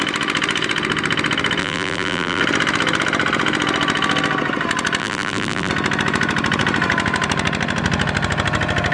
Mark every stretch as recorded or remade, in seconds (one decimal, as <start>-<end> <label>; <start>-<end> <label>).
0.0-1.6 recorded; 1.6-2.4 remade; 2.4-5.0 recorded; 5.0-5.7 remade; 5.7-8.9 recorded